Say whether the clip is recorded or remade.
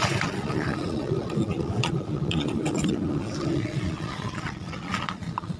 remade